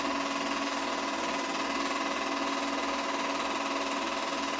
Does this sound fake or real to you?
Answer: real